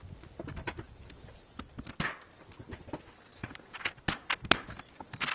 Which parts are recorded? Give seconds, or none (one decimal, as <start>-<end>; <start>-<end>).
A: 0.0-3.3; 4.1-5.3